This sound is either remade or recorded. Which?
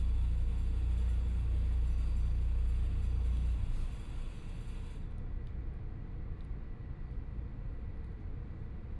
recorded